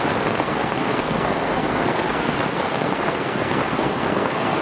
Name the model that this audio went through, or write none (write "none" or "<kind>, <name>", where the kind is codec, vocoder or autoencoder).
codec, SNAC